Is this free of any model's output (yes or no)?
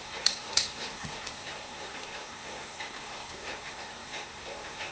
no